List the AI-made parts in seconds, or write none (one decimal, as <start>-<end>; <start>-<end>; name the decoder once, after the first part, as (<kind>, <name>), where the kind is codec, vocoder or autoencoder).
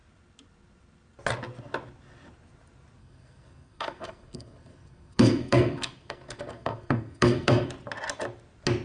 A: 3.0-7.7 (codec, SNAC)